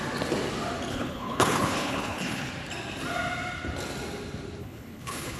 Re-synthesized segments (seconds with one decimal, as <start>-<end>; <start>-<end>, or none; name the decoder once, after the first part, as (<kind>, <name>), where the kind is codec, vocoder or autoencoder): 0.9-2.5 (codec, HILCodec); 4.6-5.4